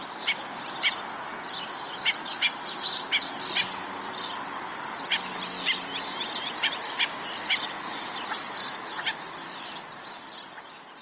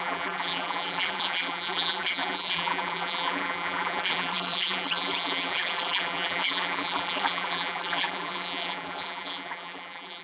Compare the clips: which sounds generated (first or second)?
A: second